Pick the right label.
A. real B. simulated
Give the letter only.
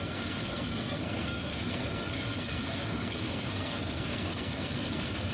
B